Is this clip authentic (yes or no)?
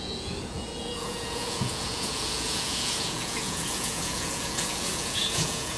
no